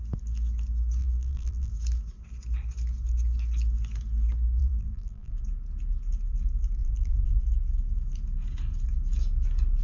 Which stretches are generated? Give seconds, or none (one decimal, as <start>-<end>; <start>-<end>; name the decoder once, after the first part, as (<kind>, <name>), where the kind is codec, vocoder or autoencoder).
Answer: 1.0-1.7 (vocoder, BigVGAN v2); 4.6-5.4; 6.8-7.4